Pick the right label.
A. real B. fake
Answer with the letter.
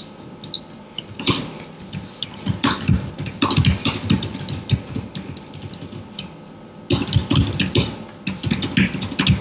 A